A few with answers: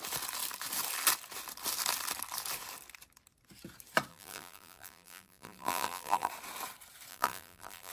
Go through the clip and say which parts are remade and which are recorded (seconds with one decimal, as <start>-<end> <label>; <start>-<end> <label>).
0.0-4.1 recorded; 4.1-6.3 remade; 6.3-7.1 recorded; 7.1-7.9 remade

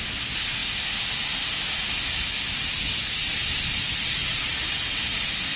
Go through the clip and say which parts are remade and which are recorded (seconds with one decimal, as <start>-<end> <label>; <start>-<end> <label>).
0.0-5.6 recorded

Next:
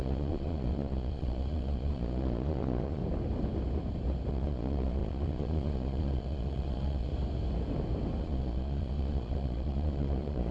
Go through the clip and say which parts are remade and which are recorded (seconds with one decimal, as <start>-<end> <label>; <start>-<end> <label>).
0.0-3.0 remade; 3.0-4.3 recorded; 4.3-7.1 remade; 7.1-8.2 recorded; 8.2-10.5 remade

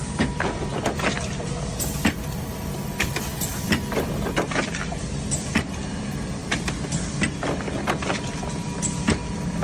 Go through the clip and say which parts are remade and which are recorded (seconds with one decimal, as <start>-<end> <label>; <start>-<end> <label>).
0.0-9.6 recorded

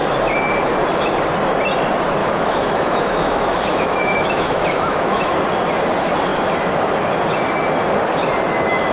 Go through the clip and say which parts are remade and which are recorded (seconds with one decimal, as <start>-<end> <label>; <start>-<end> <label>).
0.0-2.2 recorded; 2.2-5.3 remade; 5.3-8.9 recorded